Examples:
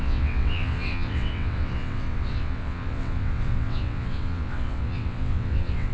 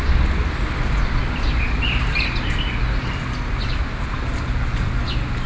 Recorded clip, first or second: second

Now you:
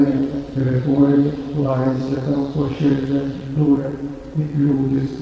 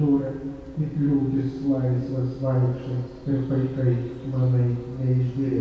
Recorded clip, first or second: second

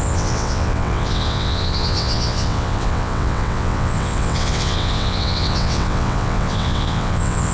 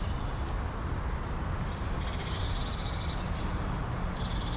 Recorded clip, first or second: second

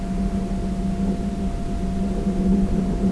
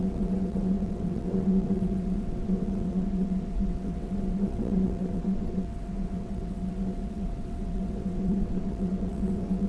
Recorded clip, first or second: first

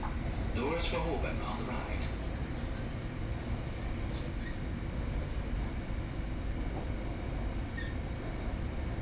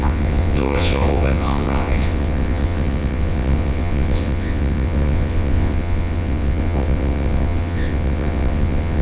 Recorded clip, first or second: first